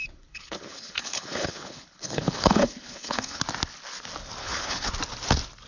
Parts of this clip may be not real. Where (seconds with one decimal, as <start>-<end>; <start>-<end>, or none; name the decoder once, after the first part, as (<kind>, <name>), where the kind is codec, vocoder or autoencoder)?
0.0-3.4 (codec, HILCodec); 4.4-4.9